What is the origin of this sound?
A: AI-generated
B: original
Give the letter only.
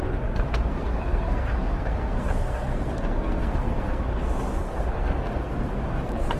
A